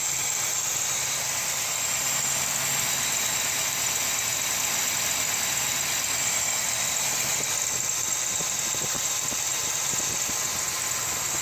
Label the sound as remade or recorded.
recorded